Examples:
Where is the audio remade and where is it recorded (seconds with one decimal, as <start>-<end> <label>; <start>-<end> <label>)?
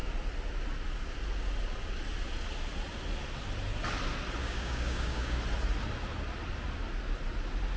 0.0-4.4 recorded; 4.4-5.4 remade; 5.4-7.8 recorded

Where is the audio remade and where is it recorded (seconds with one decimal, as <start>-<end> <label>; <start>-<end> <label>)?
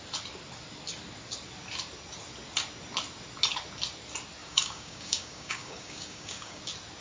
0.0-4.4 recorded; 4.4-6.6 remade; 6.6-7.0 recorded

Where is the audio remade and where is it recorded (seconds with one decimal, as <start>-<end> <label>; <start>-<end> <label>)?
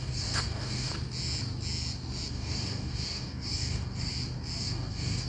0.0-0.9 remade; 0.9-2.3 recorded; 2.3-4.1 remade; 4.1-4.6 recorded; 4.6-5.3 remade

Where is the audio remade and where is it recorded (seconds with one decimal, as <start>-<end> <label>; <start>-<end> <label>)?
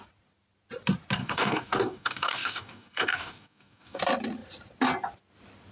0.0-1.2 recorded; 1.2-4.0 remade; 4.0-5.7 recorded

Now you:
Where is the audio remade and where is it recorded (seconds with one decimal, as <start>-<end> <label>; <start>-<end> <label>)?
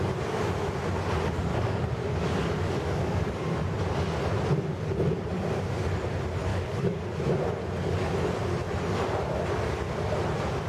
0.0-1.5 recorded; 1.5-3.3 remade; 3.3-6.5 recorded; 6.5-7.0 remade; 7.0-10.7 recorded